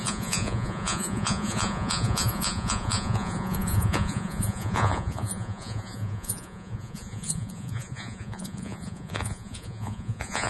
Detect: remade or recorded remade